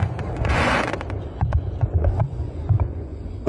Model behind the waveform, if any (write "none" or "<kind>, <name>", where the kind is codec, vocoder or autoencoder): vocoder, Vocos